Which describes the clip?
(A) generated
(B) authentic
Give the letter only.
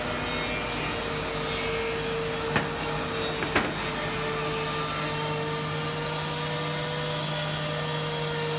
B